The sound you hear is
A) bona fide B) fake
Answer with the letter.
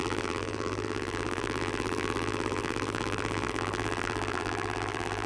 B